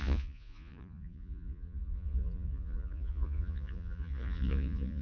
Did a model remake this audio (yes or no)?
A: yes